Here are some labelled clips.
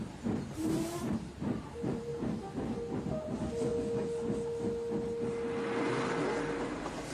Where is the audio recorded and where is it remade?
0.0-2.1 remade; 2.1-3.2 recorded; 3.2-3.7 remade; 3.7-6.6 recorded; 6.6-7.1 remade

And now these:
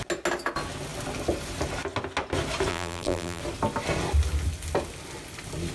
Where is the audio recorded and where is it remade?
0.0-2.7 recorded; 2.7-3.4 remade; 3.4-5.7 recorded